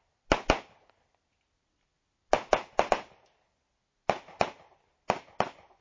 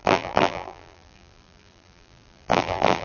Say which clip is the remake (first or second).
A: second